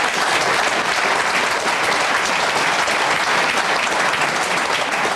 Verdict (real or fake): real